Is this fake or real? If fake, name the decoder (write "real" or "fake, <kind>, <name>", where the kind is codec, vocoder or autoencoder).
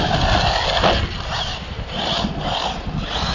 real